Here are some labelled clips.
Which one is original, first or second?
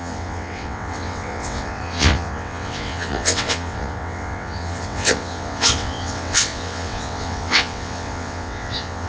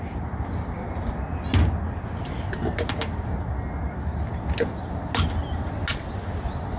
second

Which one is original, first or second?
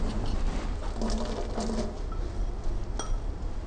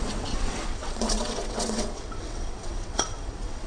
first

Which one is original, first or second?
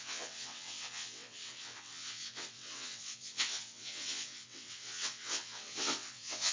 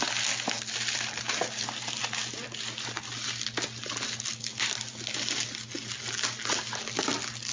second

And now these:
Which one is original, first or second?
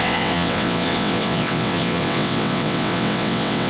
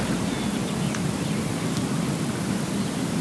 second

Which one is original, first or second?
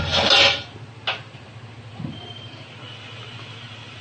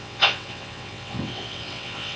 first